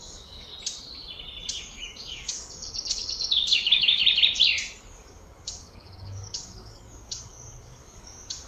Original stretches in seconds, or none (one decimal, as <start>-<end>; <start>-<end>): 0.5-1.6; 4.0-4.8